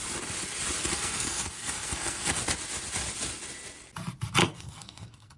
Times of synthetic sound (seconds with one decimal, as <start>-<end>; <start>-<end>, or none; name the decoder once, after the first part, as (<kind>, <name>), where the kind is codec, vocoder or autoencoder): 0.8-2.4 (codec, SNAC); 4.4-5.4